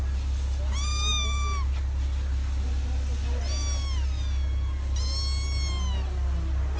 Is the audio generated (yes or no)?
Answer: no